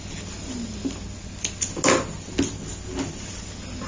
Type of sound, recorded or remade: recorded